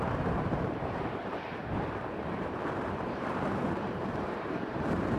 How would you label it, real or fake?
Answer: fake